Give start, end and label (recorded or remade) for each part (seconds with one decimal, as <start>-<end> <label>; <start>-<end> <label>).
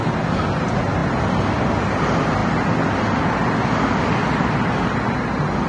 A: 0.0-5.7 recorded